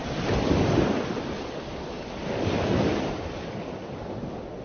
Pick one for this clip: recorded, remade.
recorded